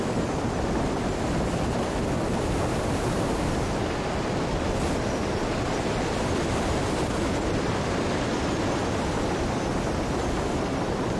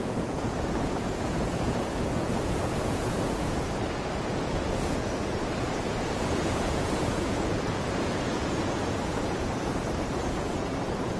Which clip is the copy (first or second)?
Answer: second